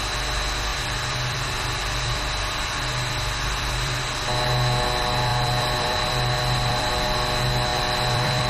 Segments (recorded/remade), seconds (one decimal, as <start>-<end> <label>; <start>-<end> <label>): 0.0-0.7 recorded; 0.7-4.0 remade; 4.0-5.3 recorded; 5.3-6.9 remade; 6.9-7.7 recorded; 7.7-8.5 remade